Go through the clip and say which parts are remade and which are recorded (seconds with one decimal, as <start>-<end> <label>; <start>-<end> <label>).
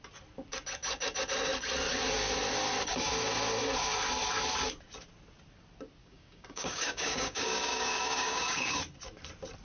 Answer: 0.0-6.0 recorded; 6.0-8.8 remade; 8.8-9.6 recorded